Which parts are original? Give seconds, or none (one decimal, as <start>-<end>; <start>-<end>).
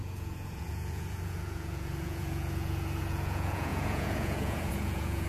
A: none